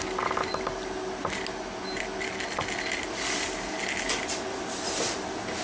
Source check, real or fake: real